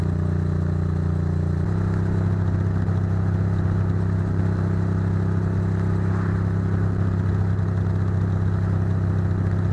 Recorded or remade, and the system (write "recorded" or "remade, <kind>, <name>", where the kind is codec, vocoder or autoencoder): recorded